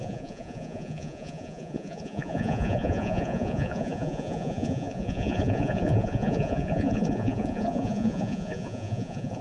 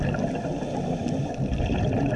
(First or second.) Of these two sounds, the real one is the second